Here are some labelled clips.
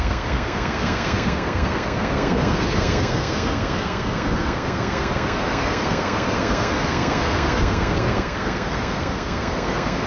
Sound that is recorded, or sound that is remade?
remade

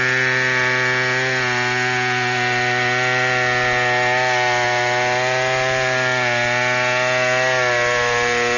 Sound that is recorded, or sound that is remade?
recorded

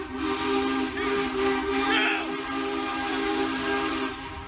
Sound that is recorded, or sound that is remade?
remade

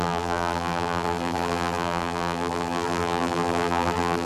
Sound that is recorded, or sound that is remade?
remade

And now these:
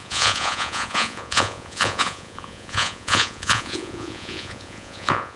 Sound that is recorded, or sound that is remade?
remade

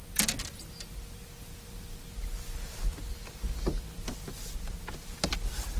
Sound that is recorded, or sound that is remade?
recorded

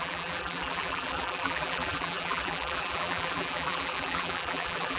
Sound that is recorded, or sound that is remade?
remade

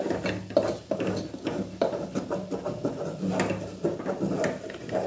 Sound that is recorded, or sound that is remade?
recorded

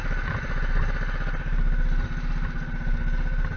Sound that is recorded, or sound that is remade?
recorded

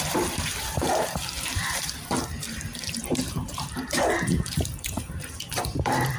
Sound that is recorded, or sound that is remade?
remade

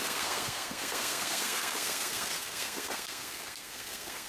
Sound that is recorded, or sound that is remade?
remade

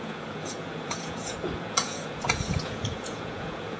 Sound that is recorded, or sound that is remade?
remade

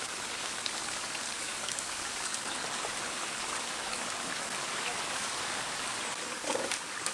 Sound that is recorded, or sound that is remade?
remade